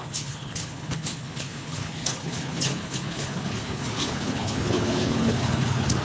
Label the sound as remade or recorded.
remade